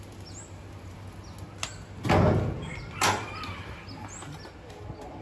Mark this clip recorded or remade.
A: recorded